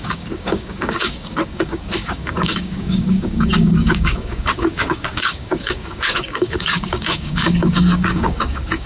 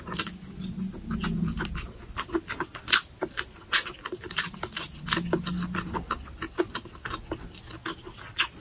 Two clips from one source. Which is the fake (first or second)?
first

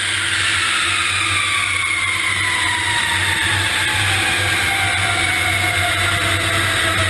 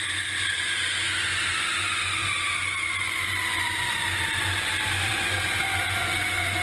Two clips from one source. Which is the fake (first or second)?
second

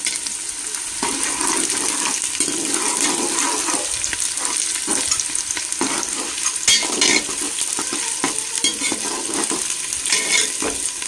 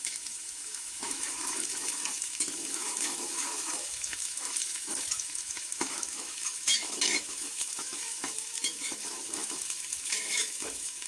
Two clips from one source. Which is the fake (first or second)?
second